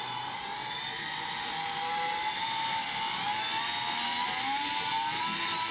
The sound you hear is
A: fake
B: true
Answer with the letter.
B